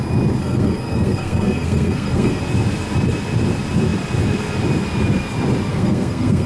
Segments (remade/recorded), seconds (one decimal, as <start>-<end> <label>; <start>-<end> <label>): 0.0-0.4 recorded; 0.4-2.4 remade; 2.4-5.7 recorded; 5.7-6.5 remade